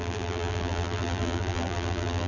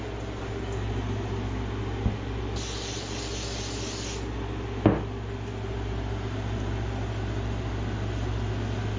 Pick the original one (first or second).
second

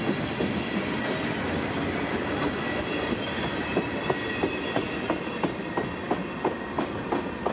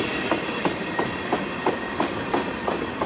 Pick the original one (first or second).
first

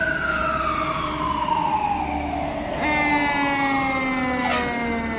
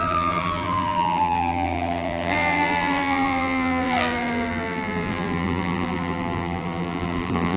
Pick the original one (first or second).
first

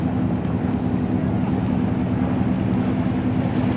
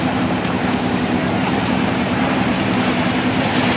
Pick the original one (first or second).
first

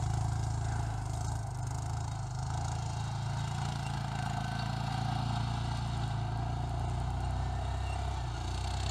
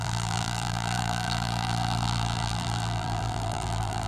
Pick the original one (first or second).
first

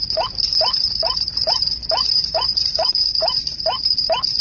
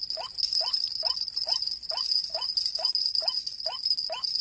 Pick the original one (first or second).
second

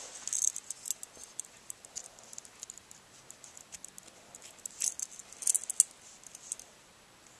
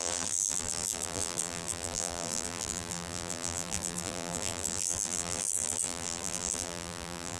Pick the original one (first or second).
first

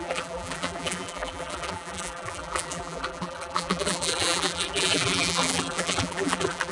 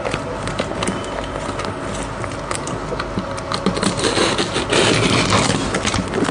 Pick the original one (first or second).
second